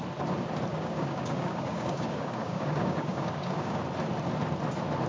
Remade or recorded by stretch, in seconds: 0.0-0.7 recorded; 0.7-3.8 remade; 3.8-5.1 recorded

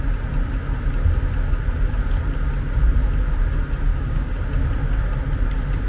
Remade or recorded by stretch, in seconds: 0.0-3.9 recorded; 3.9-4.4 remade; 4.4-5.9 recorded

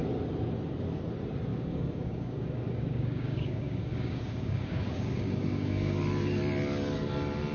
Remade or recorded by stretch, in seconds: 0.0-1.5 recorded; 1.5-6.0 remade; 6.0-7.5 recorded

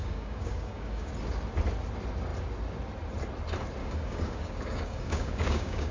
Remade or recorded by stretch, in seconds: 0.0-1.1 remade; 1.1-3.8 recorded; 3.8-5.9 remade

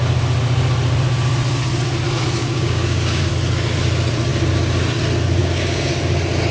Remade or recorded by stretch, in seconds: 0.0-2.4 recorded; 2.4-3.3 remade; 3.3-5.4 recorded; 5.4-5.9 remade; 5.9-6.5 recorded

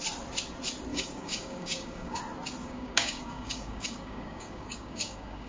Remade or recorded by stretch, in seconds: 0.0-0.9 recorded; 0.9-2.2 remade; 2.2-2.6 recorded; 2.6-5.5 remade

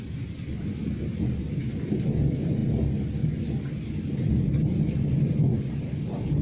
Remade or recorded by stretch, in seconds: 0.0-6.4 recorded

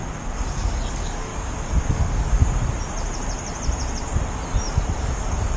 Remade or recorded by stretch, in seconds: 0.0-0.5 recorded; 0.5-1.3 remade; 1.3-1.9 recorded; 1.9-2.4 remade; 2.4-5.0 recorded; 5.0-5.6 remade